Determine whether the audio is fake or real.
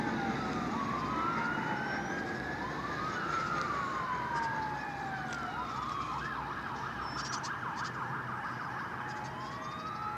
real